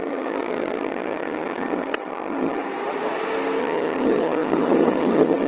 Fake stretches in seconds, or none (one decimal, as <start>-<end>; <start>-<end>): 0.0-2.6; 3.6-5.5

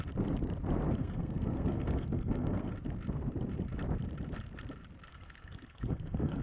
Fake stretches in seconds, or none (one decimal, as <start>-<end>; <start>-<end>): 1.0-2.7; 5.1-6.4

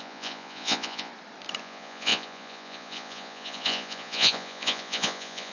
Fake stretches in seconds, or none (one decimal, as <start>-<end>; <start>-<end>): 0.0-1.1; 1.6-5.5

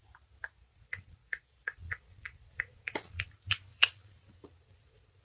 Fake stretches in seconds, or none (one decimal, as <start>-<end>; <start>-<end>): 0.6-3.3; 3.7-5.2